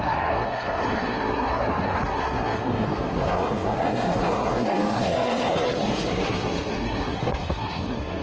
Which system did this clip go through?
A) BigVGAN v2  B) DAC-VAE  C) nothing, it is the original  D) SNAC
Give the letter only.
D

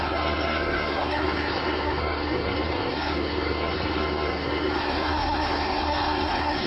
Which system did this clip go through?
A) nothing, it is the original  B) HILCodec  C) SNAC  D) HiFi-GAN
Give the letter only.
C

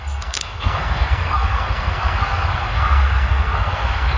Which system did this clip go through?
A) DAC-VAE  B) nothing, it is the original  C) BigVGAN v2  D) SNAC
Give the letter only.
D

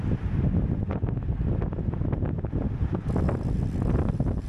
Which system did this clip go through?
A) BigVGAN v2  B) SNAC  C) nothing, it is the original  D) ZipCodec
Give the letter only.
C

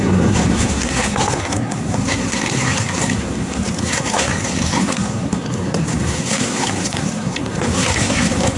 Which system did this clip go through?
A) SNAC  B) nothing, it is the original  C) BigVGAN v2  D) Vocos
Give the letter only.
A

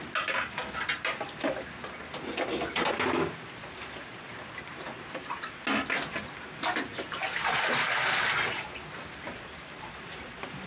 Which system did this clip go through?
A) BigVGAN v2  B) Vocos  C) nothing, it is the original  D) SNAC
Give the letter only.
C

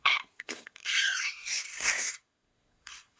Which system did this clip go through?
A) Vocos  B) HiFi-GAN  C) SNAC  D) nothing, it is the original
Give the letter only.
C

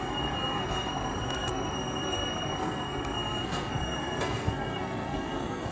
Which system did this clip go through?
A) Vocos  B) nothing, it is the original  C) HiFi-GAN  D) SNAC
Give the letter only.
D